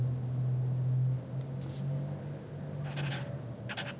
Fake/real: real